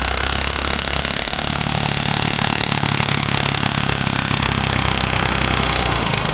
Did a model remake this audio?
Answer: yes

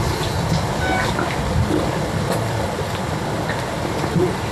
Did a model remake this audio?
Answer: no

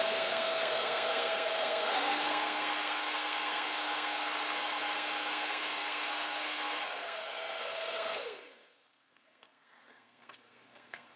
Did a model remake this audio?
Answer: yes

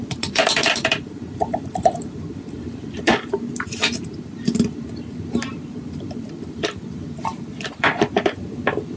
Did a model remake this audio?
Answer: yes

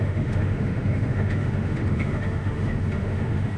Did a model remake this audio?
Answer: yes